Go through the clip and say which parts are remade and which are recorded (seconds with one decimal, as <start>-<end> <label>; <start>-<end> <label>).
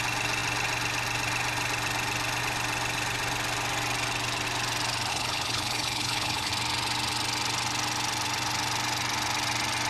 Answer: 0.0-5.1 recorded; 5.1-6.5 remade; 6.5-9.9 recorded